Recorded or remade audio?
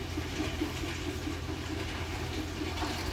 recorded